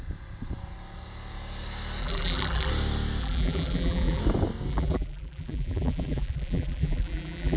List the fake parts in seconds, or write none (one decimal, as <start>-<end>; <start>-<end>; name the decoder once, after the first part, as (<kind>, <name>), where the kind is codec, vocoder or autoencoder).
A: 2.0-2.7 (vocoder, BigVGAN v2); 3.2-4.2; 4.7-7.6